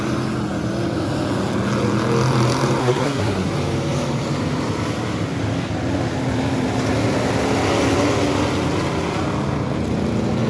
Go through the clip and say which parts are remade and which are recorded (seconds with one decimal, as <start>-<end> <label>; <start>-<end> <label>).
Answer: 0.0-2.8 recorded; 2.8-3.5 remade; 3.5-10.5 recorded